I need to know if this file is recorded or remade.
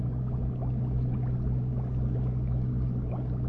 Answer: remade